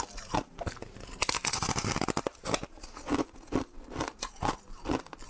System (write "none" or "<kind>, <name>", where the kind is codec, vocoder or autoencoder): none